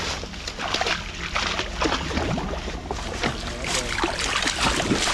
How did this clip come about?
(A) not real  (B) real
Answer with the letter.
B